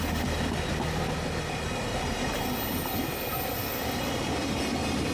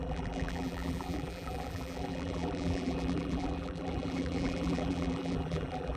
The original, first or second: first